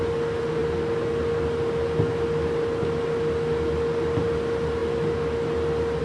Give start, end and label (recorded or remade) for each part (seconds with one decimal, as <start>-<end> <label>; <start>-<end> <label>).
0.0-6.0 recorded